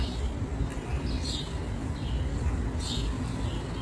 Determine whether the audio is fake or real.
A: real